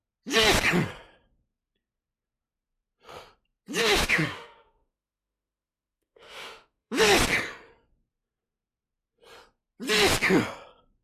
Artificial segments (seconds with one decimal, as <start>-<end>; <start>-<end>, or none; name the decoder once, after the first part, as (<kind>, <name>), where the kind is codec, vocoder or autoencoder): 3.8-7.0 (autoencoder, DAC-VAE)